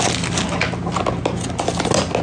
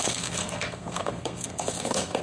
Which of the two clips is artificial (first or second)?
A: second